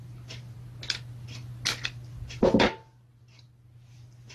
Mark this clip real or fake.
real